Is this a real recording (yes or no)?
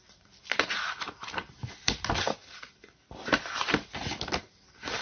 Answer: yes